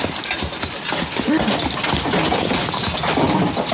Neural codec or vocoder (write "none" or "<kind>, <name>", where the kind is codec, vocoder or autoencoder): none